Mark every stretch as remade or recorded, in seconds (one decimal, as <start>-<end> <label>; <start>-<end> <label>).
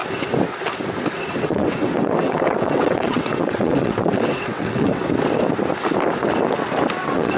0.0-1.3 recorded; 1.3-5.0 remade; 5.0-7.0 recorded; 7.0-7.4 remade